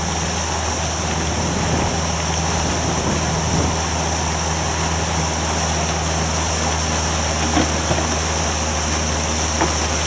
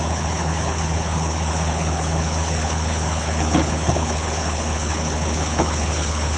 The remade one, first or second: second